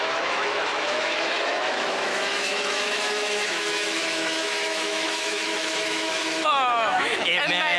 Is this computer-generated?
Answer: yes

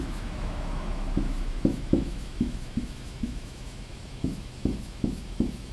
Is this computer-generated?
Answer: yes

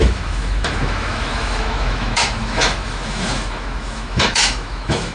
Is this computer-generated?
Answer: yes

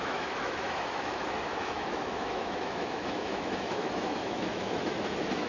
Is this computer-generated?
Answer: yes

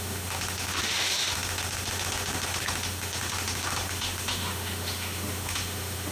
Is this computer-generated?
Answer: yes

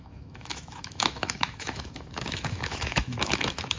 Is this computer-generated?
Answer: yes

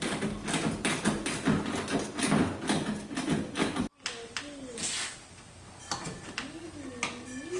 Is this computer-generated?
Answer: no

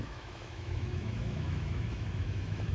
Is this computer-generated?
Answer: yes